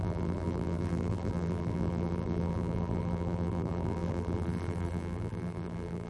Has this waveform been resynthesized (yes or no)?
yes